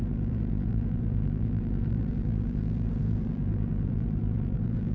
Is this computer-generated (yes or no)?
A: yes